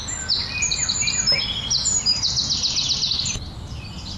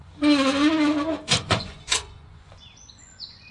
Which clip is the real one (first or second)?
first